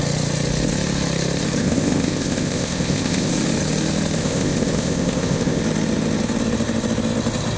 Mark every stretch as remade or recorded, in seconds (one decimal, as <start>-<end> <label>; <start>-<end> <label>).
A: 0.0-1.6 recorded; 1.6-3.3 remade; 3.3-4.2 recorded; 4.2-5.6 remade; 5.6-7.6 recorded